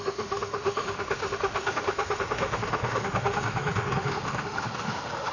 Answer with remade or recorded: remade